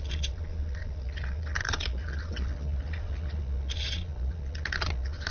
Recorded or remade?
remade